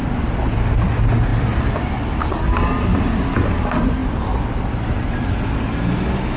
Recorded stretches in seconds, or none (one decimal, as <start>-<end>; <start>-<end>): 0.0-1.3; 2.4-2.9; 3.6-6.4